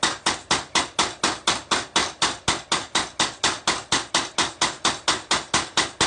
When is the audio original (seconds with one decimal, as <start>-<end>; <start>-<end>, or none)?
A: 0.0-6.1